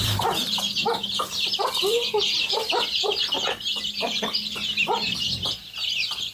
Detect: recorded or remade remade